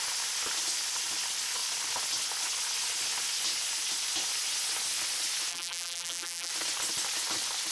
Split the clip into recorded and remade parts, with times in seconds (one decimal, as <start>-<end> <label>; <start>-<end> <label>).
0.0-5.5 recorded; 5.5-6.5 remade; 6.5-7.7 recorded